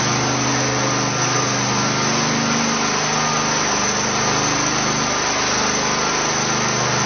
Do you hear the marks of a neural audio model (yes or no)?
no